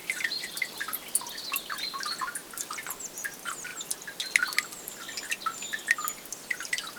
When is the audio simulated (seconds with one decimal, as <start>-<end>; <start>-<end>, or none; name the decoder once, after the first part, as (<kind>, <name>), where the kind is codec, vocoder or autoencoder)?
0.0-1.2 (vocoder, BigVGAN v2); 2.4-3.1